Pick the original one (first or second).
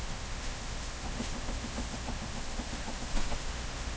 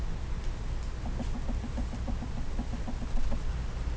second